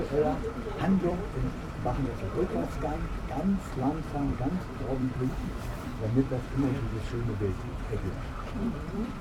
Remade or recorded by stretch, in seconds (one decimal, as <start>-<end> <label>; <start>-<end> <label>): 0.0-5.9 remade; 5.9-8.2 recorded; 8.2-9.2 remade